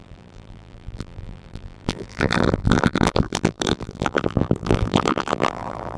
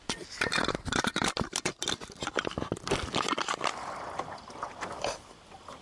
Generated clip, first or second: first